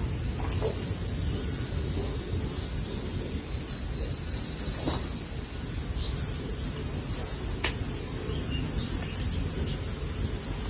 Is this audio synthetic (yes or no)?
no